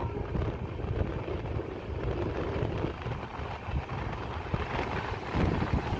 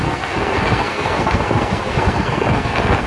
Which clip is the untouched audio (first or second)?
first